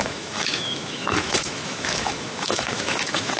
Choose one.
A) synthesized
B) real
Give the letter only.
A